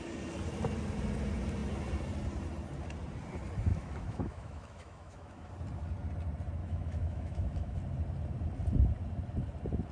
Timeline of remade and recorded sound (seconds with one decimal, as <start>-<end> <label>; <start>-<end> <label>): 0.0-3.7 recorded; 3.7-5.5 remade; 5.5-6.6 recorded; 6.6-7.8 remade; 7.8-9.9 recorded